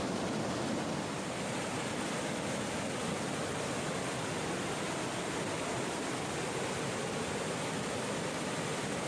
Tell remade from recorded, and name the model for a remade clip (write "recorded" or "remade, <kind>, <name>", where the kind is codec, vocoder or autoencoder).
recorded